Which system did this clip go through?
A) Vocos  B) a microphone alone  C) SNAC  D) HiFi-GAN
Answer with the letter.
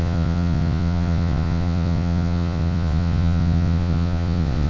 A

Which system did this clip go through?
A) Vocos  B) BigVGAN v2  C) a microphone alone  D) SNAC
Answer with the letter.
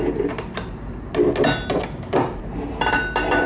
C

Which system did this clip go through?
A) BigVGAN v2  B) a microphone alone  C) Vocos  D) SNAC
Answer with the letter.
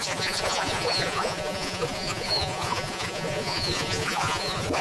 C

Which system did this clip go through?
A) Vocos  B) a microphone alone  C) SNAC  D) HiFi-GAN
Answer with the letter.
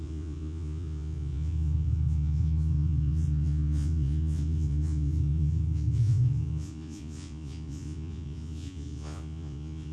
A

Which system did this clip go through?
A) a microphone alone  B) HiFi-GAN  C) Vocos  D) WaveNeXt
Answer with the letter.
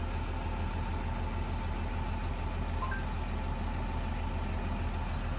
A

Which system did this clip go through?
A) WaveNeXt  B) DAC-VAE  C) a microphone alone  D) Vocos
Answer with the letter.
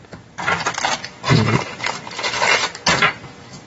C